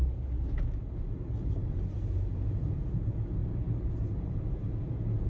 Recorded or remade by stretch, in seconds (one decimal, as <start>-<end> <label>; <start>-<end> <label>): 0.0-3.4 remade; 3.4-3.9 recorded; 3.9-5.3 remade